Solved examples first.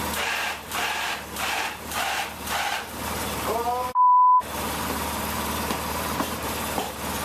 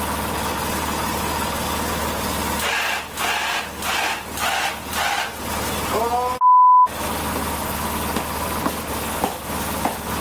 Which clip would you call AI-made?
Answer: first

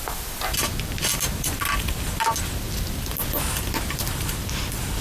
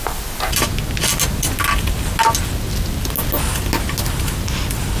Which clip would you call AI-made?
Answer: first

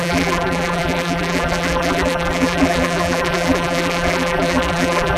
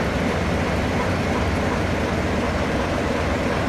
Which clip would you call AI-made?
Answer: first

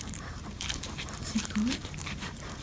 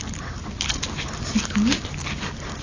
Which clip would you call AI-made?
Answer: first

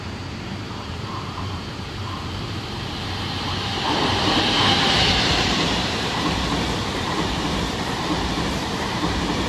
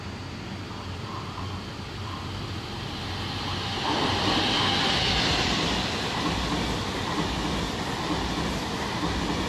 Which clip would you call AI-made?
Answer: first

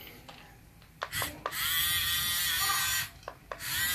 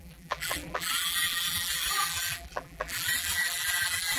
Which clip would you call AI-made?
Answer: second